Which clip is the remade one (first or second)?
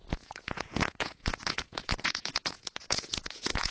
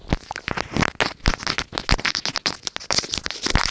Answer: first